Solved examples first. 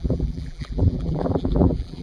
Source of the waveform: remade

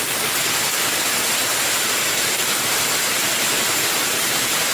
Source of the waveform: recorded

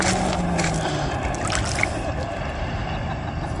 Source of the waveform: recorded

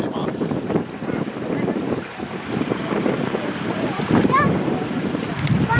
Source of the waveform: remade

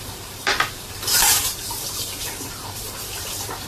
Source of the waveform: remade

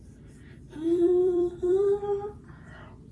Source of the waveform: remade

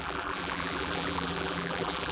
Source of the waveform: remade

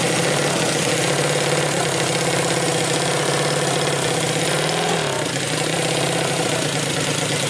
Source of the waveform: recorded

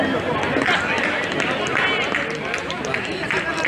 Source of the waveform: recorded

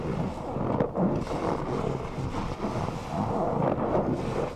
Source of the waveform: recorded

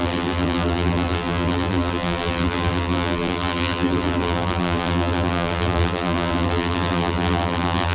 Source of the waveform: remade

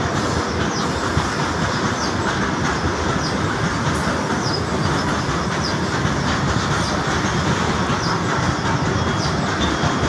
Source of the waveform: recorded